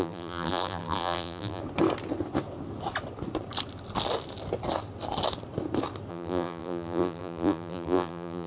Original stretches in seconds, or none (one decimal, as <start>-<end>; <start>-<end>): 1.6-6.1